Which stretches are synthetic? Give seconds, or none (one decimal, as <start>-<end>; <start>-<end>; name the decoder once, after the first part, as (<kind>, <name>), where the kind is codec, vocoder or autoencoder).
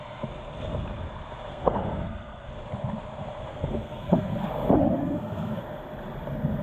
1.5-2.5 (codec, SNAC); 3.5-4.5; 5.0-5.6